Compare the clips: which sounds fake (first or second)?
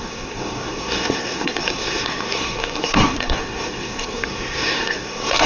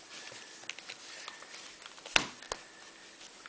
first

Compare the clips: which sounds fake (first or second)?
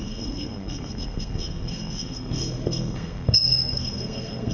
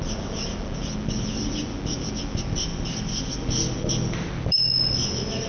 first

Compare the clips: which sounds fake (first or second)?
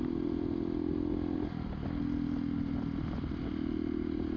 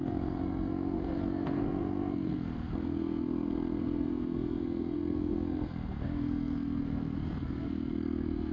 second